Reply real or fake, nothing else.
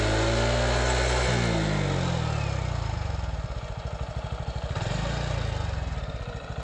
real